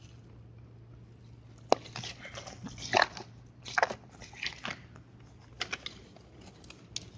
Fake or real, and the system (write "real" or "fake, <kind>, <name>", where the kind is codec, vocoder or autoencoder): real